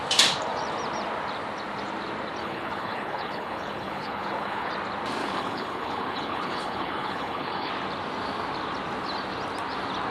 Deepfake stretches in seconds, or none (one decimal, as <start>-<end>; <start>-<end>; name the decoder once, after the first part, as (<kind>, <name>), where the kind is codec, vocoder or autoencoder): 2.4-4.7 (codec, HILCodec); 5.2-7.7